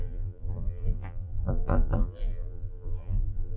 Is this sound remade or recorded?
remade